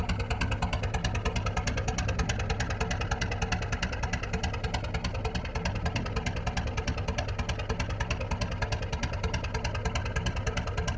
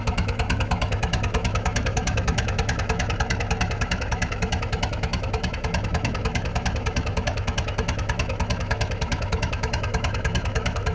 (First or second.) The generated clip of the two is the second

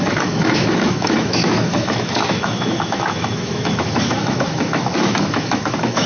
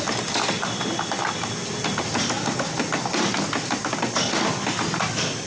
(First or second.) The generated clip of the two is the first